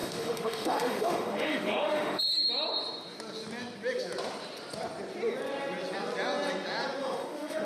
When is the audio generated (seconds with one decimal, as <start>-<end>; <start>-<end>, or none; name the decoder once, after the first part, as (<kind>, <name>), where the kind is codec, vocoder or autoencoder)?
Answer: 0.0-2.2 (autoencoder, DAC-VAE); 7.0-7.7